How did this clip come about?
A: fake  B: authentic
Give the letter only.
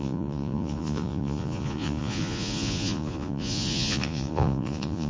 A